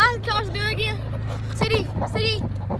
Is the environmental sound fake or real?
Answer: real